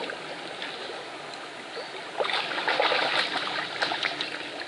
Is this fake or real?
real